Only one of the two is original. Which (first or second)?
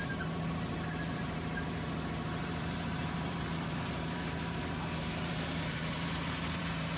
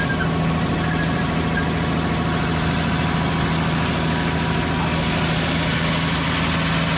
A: second